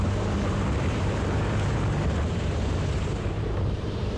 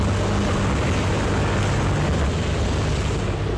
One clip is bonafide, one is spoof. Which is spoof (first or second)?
first